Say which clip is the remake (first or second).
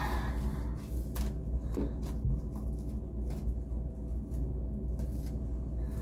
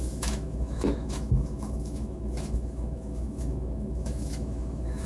second